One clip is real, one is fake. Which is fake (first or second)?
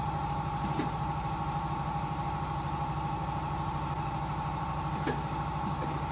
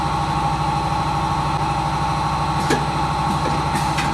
first